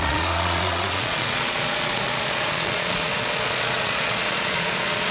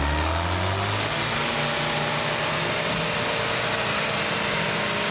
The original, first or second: second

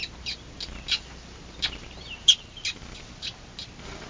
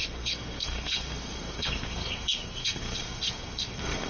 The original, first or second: first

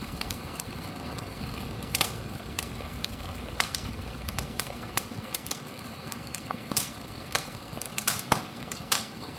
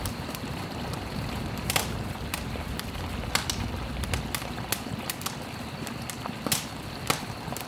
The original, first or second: second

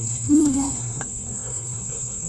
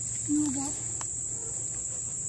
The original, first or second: second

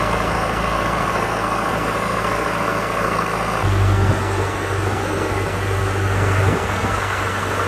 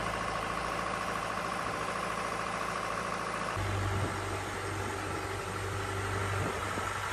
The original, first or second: second